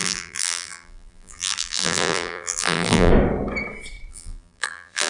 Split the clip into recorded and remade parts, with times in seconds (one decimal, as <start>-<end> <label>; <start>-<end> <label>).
0.0-3.1 remade; 3.1-4.1 recorded; 4.1-5.1 remade